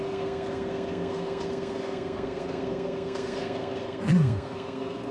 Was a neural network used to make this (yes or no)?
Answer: yes